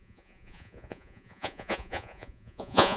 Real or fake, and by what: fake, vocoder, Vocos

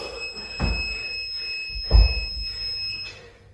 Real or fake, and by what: real